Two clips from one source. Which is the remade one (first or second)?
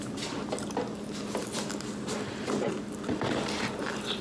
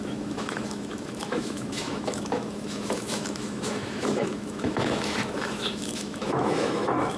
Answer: second